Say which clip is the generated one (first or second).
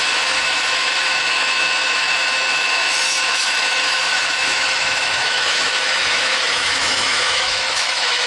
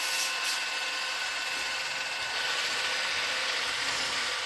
first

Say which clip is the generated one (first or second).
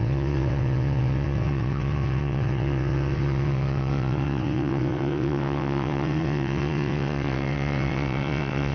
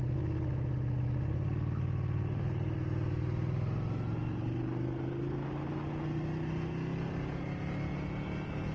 first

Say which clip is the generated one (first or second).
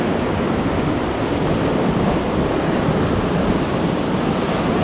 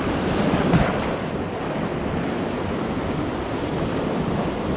second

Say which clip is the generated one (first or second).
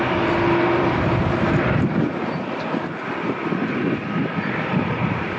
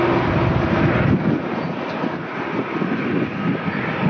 first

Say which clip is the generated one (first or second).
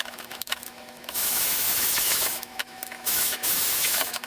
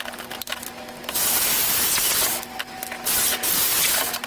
first